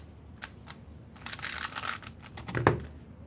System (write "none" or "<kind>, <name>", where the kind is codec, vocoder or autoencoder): none